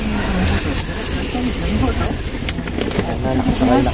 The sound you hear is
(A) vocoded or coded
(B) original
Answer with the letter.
B